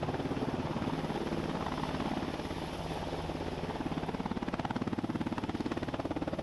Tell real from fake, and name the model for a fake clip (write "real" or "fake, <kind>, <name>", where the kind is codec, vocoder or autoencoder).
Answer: real